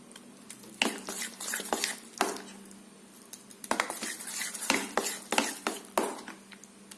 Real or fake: real